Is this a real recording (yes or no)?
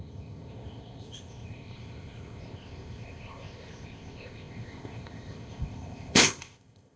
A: no